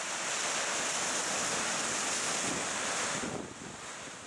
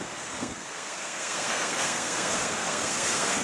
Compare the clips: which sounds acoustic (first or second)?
first